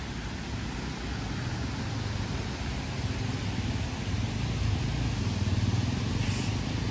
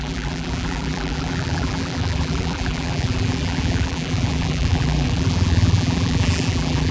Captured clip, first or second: first